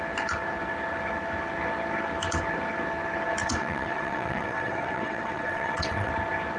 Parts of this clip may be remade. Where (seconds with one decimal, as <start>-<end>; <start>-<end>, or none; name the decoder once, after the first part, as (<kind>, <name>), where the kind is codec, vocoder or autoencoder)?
3.4-6.1 (vocoder, WaveNeXt)